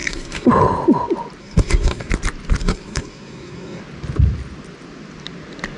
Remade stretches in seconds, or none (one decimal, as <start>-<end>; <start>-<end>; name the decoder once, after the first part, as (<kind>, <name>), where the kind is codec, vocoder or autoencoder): 0.0-0.5 (codec, SNAC); 1.4-2.1; 2.6-3.8